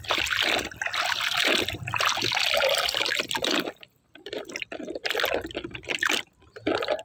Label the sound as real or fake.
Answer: real